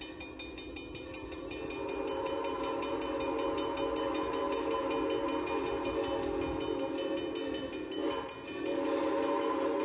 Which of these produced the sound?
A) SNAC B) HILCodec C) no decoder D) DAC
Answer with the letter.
C